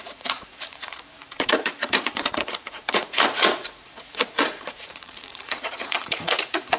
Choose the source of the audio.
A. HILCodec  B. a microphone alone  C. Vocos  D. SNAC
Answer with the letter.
C